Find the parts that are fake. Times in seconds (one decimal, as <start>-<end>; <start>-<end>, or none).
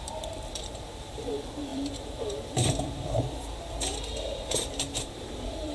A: 0.0-5.7